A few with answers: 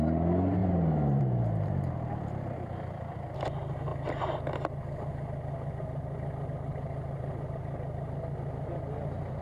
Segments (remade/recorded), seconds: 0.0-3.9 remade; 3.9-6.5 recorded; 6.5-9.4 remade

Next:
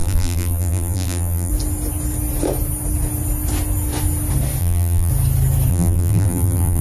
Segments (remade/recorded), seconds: 0.0-1.5 remade; 1.5-4.6 recorded; 4.6-5.1 remade; 5.1-5.7 recorded; 5.7-6.8 remade

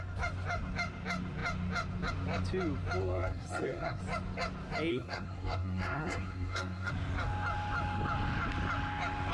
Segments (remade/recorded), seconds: 0.0-3.0 recorded; 3.0-4.0 remade; 4.0-4.9 recorded; 4.9-6.9 remade; 6.9-9.3 recorded

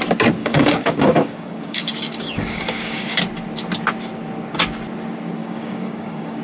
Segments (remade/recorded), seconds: 0.0-0.4 recorded; 0.4-3.2 remade; 3.2-5.4 recorded; 5.4-6.4 remade

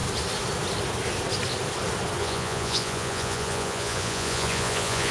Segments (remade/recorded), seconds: 0.0-2.2 recorded; 2.2-5.1 remade

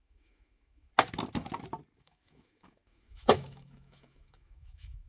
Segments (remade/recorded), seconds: 0.0-0.9 remade; 0.9-2.0 recorded; 2.0-5.1 remade

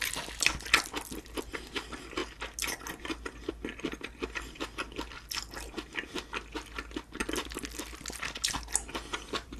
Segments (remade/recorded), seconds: 0.0-9.6 recorded

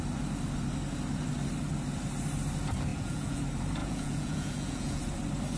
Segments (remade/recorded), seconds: 0.0-2.9 recorded; 2.9-3.4 remade; 3.4-3.8 recorded; 3.8-5.0 remade; 5.0-5.6 recorded